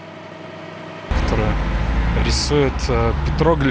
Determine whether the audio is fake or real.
real